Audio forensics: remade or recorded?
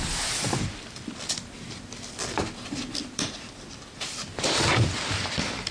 remade